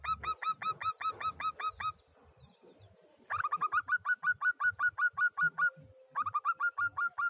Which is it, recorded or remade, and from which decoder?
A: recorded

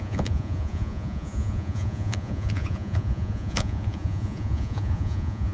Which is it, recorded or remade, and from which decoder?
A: remade, vocoder, Vocos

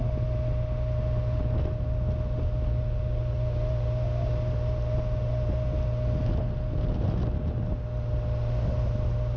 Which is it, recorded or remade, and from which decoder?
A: recorded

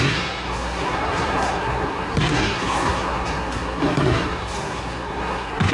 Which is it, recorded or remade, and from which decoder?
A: remade, codec, SNAC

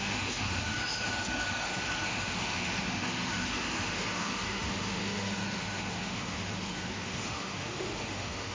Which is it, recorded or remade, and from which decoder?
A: remade, autoencoder, DAC-VAE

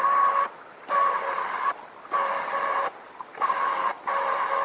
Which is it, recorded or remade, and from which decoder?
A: recorded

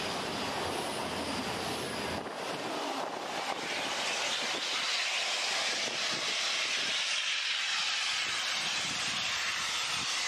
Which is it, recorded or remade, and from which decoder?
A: recorded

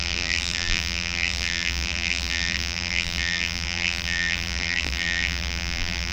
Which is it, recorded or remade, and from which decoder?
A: remade, vocoder, BigVGAN v2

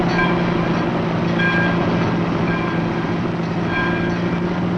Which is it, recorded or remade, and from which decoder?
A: recorded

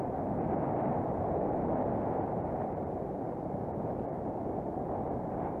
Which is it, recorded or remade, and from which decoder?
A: recorded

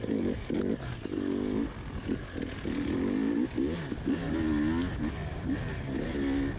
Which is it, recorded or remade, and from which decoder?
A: recorded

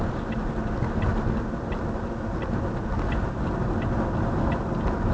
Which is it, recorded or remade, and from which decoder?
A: recorded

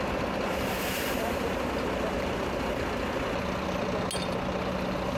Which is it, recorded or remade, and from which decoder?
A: recorded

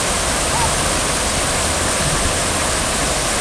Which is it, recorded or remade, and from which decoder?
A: recorded